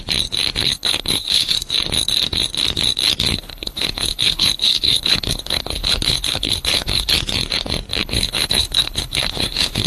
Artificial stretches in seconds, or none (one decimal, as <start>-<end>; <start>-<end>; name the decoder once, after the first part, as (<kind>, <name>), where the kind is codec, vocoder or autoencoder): 0.6-1.5 (codec, HILCodec); 3.3-7.1; 7.9-9.9